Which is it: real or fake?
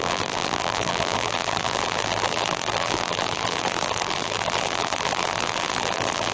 fake